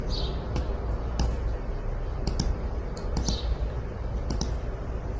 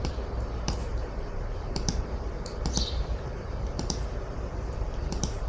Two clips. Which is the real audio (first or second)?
first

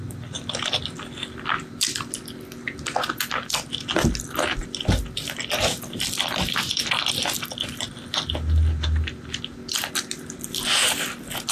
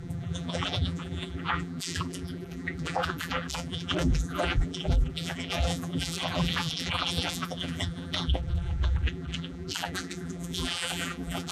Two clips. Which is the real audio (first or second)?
first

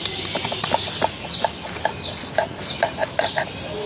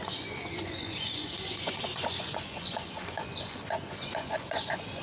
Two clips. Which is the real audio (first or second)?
first